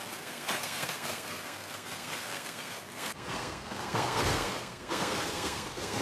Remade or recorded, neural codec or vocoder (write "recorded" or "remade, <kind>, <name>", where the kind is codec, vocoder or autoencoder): remade, codec, SNAC